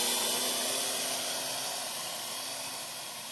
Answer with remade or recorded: remade